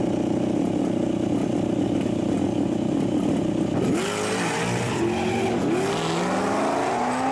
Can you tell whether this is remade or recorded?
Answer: recorded